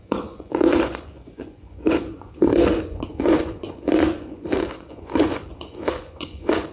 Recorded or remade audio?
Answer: remade